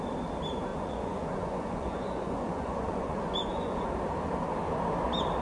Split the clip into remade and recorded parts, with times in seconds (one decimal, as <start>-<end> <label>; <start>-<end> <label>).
0.0-0.7 recorded; 0.7-3.9 remade; 3.9-5.4 recorded

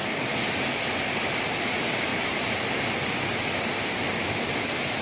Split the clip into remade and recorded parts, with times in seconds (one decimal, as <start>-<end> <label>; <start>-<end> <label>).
0.0-2.1 recorded; 2.1-2.7 remade; 2.7-5.0 recorded

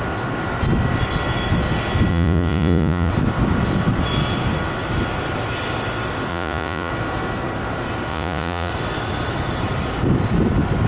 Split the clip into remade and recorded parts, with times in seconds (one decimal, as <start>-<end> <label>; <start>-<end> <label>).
0.0-2.1 recorded; 2.1-3.1 remade; 3.1-6.3 recorded; 6.3-6.9 remade; 6.9-8.1 recorded; 8.1-8.7 remade; 8.7-10.9 recorded

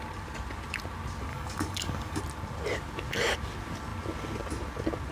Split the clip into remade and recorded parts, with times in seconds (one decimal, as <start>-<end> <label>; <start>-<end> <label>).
0.0-1.3 recorded; 1.3-2.2 remade; 2.2-5.1 recorded

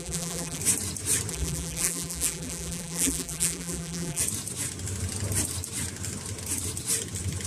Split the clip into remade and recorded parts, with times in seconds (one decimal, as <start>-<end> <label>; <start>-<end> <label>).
0.0-0.6 remade; 0.6-1.3 recorded; 1.3-4.2 remade; 4.2-7.5 recorded